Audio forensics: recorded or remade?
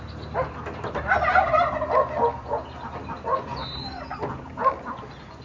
recorded